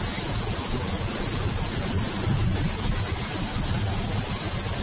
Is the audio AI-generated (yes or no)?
no